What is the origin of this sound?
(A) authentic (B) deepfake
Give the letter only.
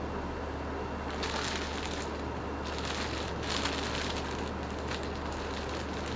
A